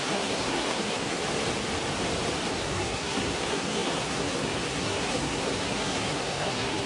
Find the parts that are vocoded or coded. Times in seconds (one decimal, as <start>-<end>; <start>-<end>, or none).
0.0-1.2; 2.5-6.9